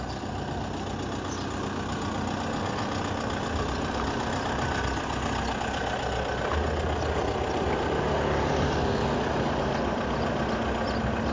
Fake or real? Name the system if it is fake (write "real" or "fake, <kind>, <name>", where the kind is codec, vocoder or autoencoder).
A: real